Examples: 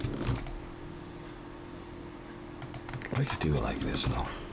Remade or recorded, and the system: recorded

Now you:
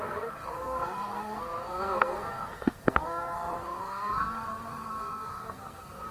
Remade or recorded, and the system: remade, codec, SNAC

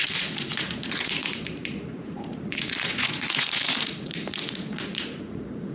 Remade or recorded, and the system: remade, vocoder, Vocos